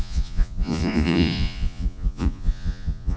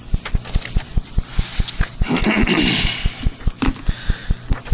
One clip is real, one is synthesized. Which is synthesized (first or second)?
first